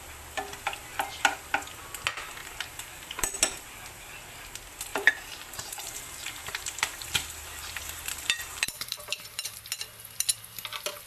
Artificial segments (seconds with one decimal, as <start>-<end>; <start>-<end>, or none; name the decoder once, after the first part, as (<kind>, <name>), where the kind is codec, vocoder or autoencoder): 2.4-3.2 (vocoder, BigVGAN v2); 4.9-9.6